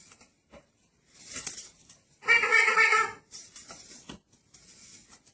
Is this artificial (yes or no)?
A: yes